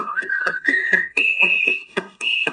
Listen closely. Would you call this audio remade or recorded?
remade